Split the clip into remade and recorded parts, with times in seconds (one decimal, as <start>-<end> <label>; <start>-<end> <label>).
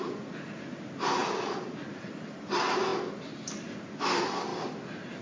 0.0-5.2 recorded